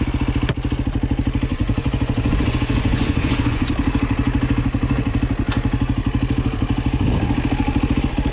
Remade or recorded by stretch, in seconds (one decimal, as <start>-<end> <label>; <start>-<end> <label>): 0.0-1.5 recorded; 1.5-3.7 remade; 3.7-8.3 recorded